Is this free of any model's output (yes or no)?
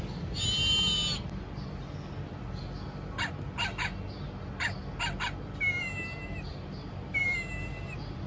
yes